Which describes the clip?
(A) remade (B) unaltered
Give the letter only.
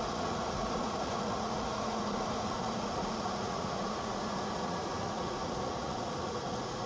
A